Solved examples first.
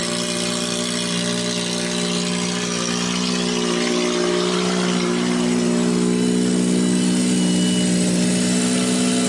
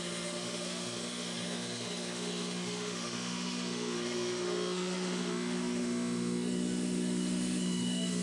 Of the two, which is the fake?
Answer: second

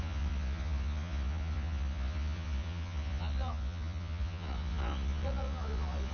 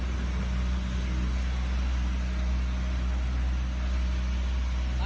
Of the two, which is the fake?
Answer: first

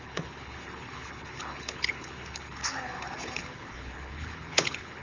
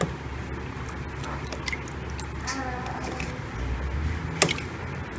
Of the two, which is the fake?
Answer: first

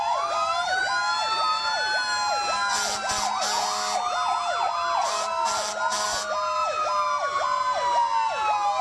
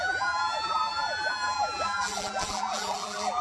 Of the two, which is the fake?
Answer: second